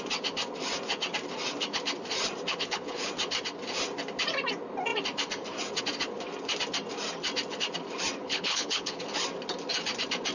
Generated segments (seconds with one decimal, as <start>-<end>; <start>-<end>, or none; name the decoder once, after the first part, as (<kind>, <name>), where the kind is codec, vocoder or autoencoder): 2.5-3.1 (codec, HILCodec); 8.2-9.0